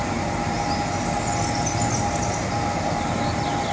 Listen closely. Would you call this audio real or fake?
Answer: real